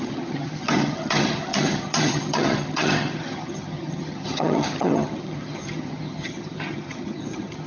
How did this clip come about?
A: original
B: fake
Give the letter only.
B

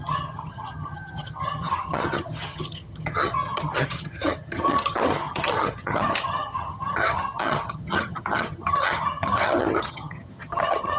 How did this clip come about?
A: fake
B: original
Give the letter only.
A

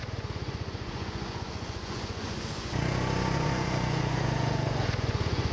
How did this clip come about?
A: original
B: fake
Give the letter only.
B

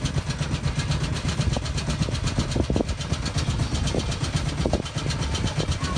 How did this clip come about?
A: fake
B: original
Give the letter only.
B